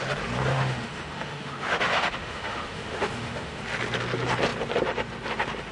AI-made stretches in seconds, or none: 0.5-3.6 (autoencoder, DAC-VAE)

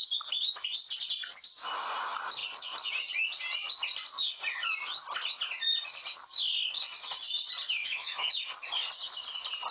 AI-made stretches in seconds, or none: 7.8-8.3 (autoencoder, DAC-VAE)

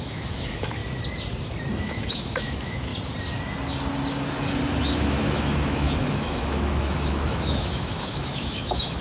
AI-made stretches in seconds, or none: 0.0-0.8 (autoencoder, DAC-VAE); 1.8-2.9; 5.0-9.0

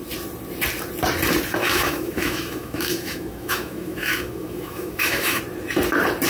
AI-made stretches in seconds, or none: 1.6-5.4 (autoencoder, DAC-VAE)

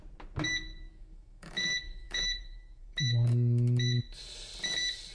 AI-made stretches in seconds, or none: 0.9-4.0 (autoencoder, DAC-VAE)

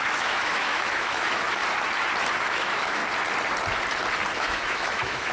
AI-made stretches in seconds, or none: 0.0-1.6 (autoencoder, DAC-VAE); 2.4-3.0; 4.4-5.3

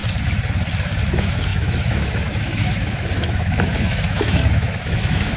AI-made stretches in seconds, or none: 1.1-5.4 (autoencoder, DAC-VAE)

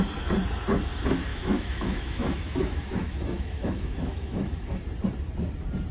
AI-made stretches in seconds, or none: 1.3-4.8 (autoencoder, DAC-VAE)